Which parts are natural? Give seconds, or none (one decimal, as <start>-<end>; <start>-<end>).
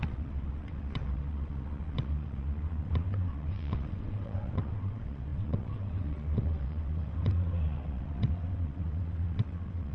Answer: none